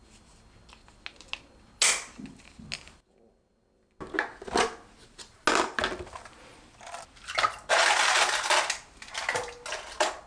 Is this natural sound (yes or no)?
yes